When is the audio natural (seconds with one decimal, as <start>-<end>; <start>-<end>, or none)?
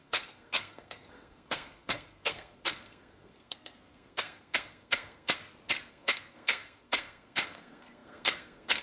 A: 5.4-5.9